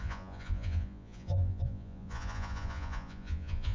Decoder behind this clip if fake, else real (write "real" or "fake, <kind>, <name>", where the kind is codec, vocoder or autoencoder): fake, vocoder, Vocos